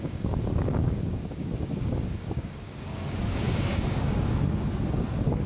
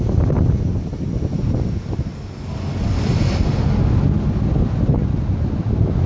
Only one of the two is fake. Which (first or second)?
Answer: first